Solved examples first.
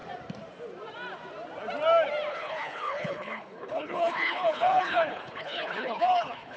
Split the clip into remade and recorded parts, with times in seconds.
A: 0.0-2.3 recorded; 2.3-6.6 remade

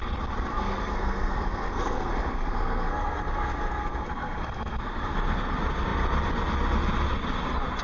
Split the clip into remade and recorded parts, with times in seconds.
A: 0.0-0.5 recorded; 0.5-5.2 remade; 5.2-7.8 recorded

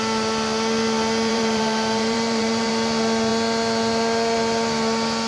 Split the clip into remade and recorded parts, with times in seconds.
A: 0.0-1.3 recorded; 1.3-2.7 remade; 2.7-5.3 recorded

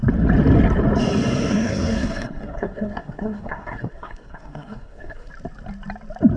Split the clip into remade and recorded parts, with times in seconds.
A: 0.0-1.5 recorded; 1.5-5.3 remade; 5.3-6.4 recorded

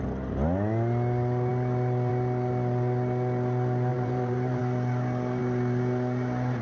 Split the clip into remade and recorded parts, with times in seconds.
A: 0.0-3.9 recorded; 3.9-4.6 remade; 4.6-6.6 recorded

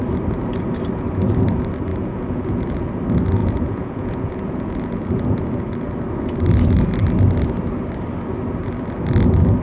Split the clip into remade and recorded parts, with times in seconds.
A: 0.0-1.9 recorded; 1.9-2.9 remade; 2.9-3.4 recorded; 3.4-5.9 remade; 5.9-9.6 recorded

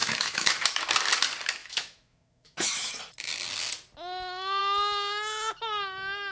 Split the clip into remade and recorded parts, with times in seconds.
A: 0.0-0.5 remade; 0.5-1.6 recorded; 1.6-3.0 remade; 3.0-6.3 recorded

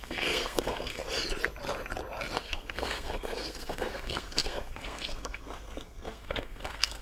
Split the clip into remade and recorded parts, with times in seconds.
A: 0.0-1.0 remade; 1.0-2.4 recorded; 2.4-7.0 remade